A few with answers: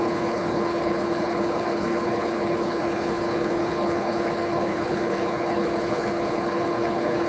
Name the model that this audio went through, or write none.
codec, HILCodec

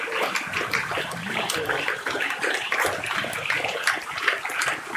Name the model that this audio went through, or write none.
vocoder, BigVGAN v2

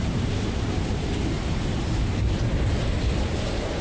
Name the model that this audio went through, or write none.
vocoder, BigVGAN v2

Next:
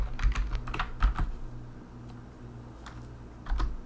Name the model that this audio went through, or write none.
none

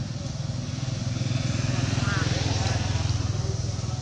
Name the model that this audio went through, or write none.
none